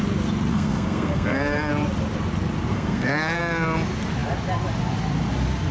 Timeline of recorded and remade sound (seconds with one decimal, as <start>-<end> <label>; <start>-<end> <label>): 0.0-0.5 recorded; 0.5-1.7 remade; 1.7-2.7 recorded; 2.7-3.4 remade; 3.4-5.7 recorded